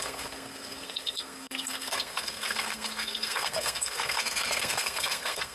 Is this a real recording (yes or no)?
no